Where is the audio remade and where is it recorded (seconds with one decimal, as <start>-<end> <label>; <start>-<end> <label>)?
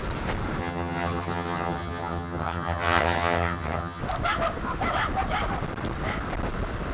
0.0-0.6 recorded; 0.6-4.0 remade; 4.0-6.9 recorded